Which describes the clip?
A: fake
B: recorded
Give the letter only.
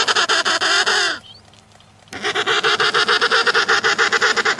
B